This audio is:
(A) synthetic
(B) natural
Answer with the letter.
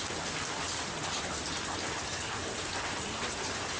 B